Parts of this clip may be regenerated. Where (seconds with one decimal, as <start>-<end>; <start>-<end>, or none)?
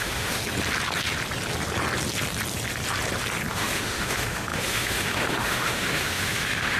0.0-0.4; 3.5-6.8